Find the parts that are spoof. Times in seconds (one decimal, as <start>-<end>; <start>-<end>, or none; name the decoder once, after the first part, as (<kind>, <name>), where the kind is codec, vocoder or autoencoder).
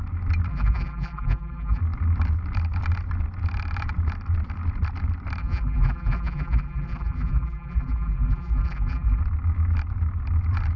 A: 0.5-1.8 (vocoder, BigVGAN v2); 5.4-9.2